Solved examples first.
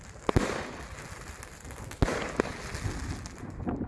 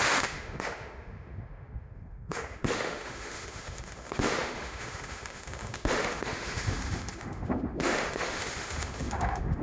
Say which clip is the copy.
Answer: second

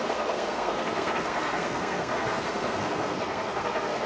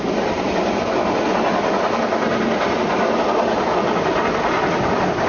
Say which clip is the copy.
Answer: first